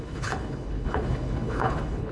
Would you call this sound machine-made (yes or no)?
yes